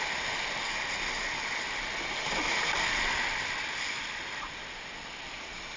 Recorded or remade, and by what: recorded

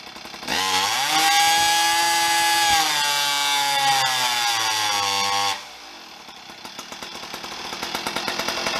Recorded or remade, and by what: recorded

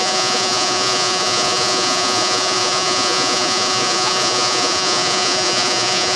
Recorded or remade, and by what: remade, vocoder, Vocos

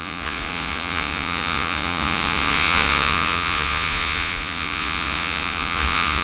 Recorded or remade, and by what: remade, vocoder, Vocos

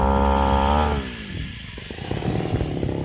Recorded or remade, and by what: recorded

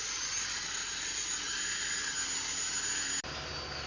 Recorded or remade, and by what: recorded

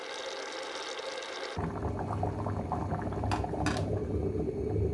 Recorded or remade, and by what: recorded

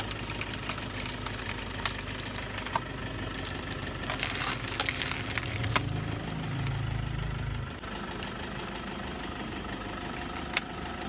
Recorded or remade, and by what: recorded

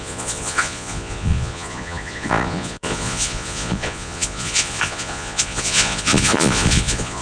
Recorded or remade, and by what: remade, vocoder, Vocos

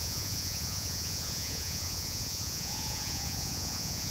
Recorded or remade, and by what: remade, vocoder, Vocos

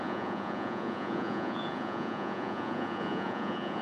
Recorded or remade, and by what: remade, vocoder, Vocos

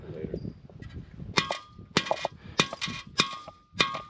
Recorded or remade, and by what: recorded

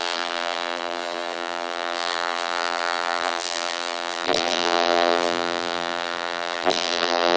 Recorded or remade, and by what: remade, vocoder, BigVGAN v2